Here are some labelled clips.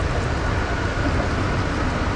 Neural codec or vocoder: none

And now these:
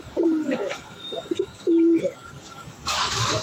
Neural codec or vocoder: codec, DAC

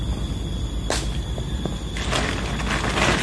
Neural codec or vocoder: none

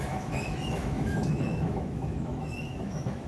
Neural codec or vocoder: autoencoder, DAC-VAE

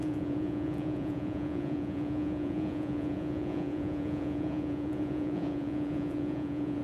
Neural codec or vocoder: vocoder, Vocos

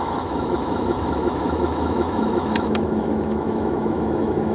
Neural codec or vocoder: autoencoder, DAC-VAE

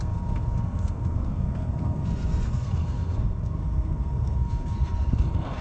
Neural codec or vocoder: codec, SNAC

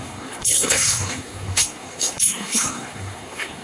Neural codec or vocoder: codec, SNAC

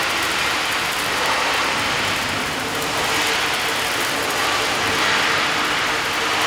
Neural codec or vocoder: none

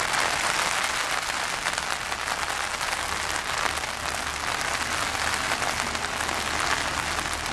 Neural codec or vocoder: none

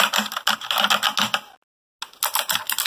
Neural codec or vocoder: none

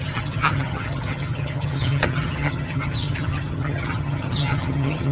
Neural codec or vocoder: vocoder, HiFi-GAN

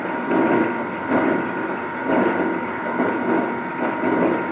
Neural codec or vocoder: none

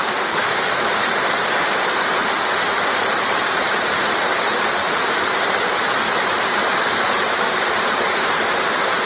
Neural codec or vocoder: vocoder, BigVGAN v2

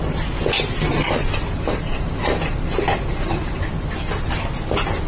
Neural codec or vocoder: none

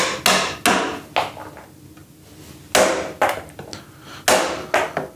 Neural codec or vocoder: none